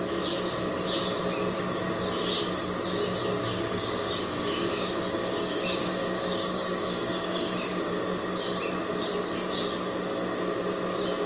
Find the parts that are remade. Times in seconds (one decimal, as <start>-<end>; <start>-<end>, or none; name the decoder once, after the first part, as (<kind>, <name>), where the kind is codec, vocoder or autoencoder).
3.4-7.9 (codec, DAC)